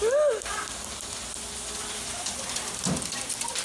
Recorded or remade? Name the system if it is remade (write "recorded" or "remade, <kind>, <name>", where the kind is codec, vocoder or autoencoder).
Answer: recorded